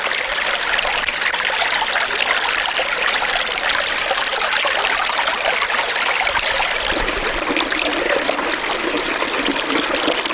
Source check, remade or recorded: recorded